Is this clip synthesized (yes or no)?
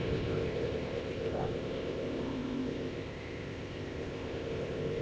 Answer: yes